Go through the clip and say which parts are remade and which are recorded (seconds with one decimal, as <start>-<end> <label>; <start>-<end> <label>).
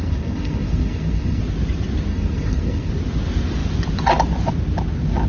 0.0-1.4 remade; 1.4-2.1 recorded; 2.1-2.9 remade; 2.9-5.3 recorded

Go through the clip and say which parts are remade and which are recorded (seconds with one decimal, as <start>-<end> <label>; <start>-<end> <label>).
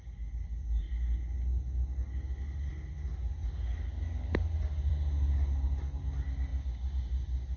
0.0-7.6 recorded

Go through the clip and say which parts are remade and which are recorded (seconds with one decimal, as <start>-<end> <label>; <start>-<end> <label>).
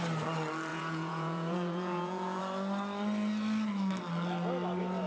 0.0-0.7 recorded; 0.7-2.4 remade; 2.4-5.1 recorded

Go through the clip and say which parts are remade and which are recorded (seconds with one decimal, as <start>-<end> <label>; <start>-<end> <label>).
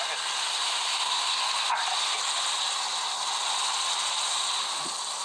0.0-0.5 recorded; 0.5-1.4 remade; 1.4-5.2 recorded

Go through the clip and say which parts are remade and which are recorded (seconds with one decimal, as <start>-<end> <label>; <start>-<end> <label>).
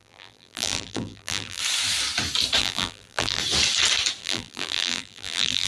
0.0-1.6 remade; 1.6-2.6 recorded; 2.6-3.4 remade; 3.4-4.2 recorded; 4.2-5.7 remade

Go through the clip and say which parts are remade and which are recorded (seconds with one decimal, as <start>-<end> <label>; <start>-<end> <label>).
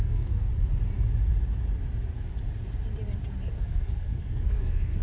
0.0-0.5 remade; 0.5-3.5 recorded; 3.5-5.0 remade